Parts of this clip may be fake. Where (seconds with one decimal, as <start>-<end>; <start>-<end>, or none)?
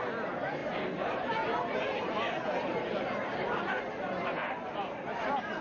0.6-3.8